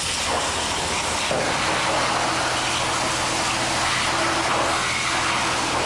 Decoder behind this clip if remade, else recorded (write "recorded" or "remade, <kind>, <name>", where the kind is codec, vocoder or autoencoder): recorded